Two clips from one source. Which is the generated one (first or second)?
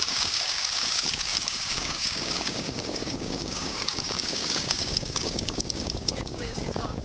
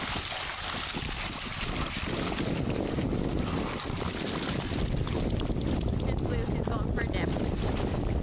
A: first